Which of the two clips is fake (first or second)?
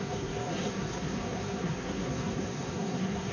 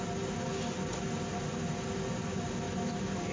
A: first